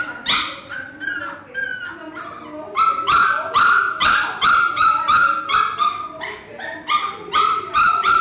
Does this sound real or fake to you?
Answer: real